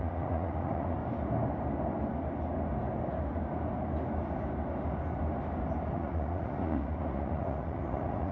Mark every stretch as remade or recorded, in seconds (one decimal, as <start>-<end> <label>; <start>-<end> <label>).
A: 0.0-1.0 remade; 1.0-5.9 recorded; 5.9-8.3 remade